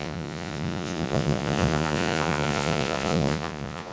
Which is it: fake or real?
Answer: fake